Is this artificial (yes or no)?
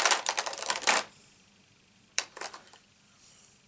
yes